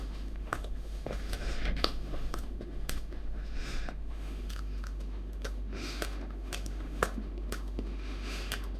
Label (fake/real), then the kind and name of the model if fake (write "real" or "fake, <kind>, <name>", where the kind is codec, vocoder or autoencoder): fake, autoencoder, DAC-VAE